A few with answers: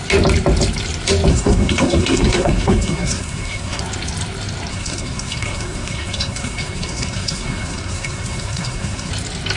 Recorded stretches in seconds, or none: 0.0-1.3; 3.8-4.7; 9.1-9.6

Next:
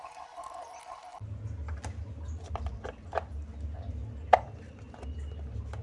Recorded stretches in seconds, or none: 0.0-5.8

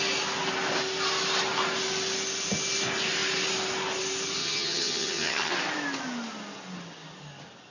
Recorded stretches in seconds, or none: 0.0-4.4; 5.5-7.7

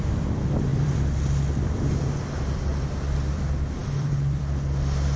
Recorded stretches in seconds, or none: 0.0-0.7; 2.1-2.7; 3.4-3.8; 4.4-5.2

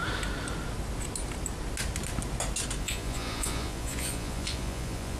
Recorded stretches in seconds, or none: 0.0-2.8

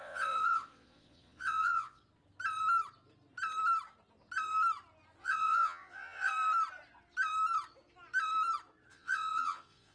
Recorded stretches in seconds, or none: 2.0-5.2; 6.3-8.9

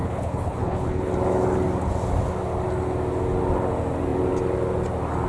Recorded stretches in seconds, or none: 1.1-5.3